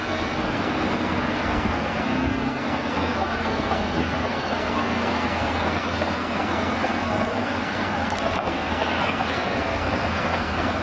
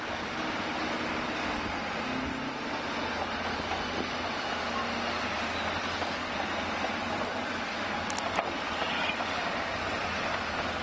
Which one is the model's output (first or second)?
first